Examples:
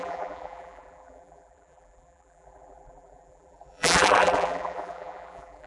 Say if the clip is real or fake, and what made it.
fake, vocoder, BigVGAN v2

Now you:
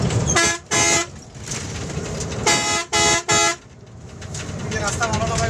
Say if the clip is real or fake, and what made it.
real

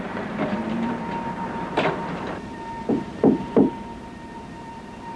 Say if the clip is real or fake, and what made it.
fake, vocoder, BigVGAN v2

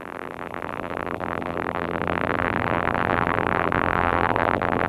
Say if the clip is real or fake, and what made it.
fake, vocoder, BigVGAN v2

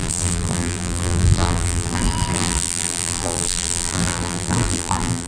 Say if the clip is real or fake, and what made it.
fake, vocoder, BigVGAN v2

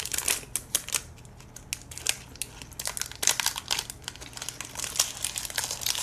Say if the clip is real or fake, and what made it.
real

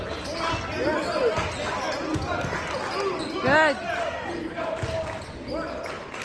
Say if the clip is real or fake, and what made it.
real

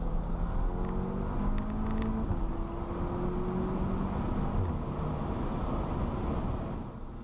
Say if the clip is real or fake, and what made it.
real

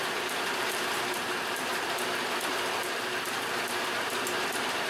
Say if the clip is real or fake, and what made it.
real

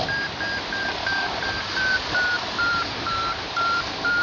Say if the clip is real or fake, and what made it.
fake, vocoder, BigVGAN v2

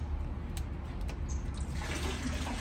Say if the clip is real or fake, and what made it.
real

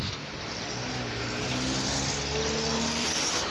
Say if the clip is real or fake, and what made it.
real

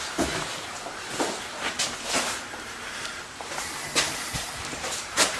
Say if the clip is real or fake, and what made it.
fake, vocoder, BigVGAN v2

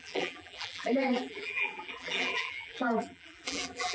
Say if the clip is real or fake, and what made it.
fake, vocoder, BigVGAN v2